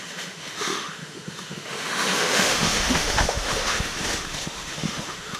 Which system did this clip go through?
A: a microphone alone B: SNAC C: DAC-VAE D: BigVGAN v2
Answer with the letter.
C